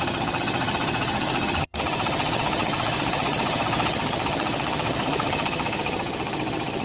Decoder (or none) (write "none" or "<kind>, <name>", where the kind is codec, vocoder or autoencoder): vocoder, HiFi-GAN